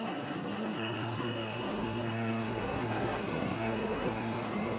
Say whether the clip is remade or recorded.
remade